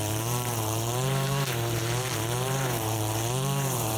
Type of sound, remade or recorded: remade